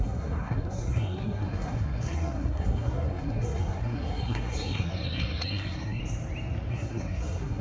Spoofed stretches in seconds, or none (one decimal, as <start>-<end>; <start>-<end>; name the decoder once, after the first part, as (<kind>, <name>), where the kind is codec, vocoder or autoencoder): 0.0-6.0 (codec, SNAC); 6.7-7.6